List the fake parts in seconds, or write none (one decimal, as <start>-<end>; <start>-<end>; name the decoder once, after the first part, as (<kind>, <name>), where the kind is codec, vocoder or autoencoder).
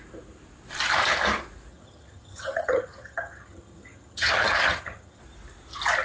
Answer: 1.7-5.2 (vocoder, HiFi-GAN)